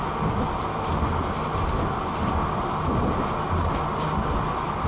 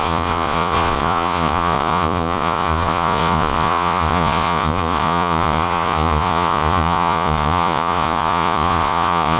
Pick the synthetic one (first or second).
second